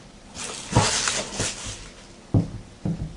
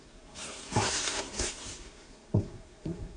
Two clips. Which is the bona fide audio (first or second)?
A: first